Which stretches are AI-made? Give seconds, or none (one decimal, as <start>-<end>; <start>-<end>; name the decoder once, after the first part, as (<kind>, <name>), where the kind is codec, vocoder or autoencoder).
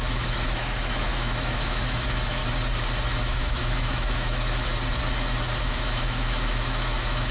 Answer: 0.0-2.4 (autoencoder, DAC-VAE); 3.2-4.7; 5.6-7.3